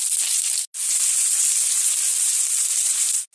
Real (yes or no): yes